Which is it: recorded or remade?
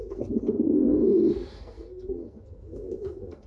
remade